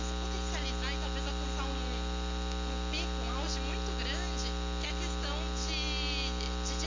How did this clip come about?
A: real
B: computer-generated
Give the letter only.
A